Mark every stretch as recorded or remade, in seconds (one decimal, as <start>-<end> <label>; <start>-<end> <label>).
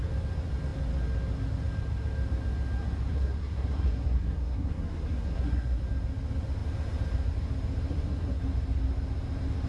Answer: 0.0-3.1 recorded; 3.1-5.8 remade; 5.8-7.9 recorded; 7.9-8.4 remade; 8.4-9.7 recorded